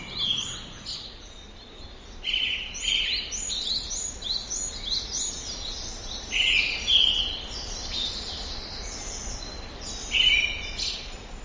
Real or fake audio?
real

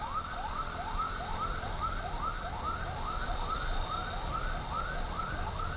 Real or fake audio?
real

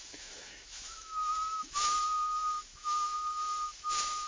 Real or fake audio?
fake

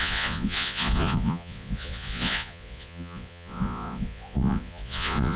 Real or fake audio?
fake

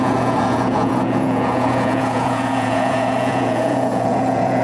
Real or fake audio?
fake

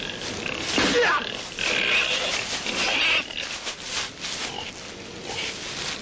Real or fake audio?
real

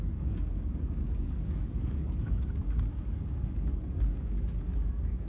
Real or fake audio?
fake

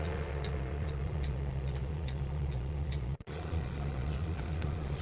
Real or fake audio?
fake